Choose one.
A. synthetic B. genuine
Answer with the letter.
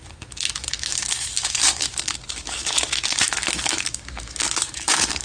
A